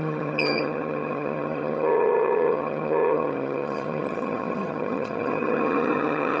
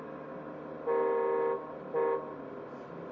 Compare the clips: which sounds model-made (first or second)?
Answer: first